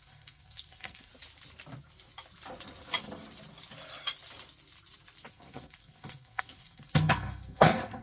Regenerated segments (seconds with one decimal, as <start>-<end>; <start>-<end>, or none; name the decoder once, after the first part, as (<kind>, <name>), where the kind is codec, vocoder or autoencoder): 0.0-1.1 (codec, SNAC); 5.3-8.0